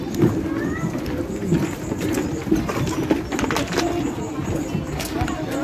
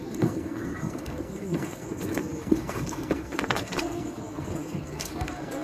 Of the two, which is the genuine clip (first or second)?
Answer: first